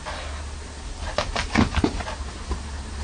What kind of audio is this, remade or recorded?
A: recorded